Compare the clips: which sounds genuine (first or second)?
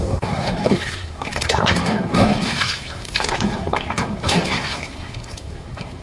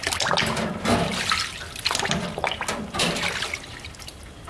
second